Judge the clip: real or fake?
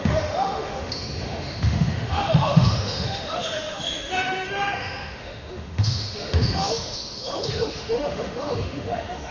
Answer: fake